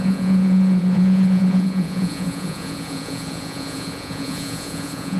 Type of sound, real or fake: fake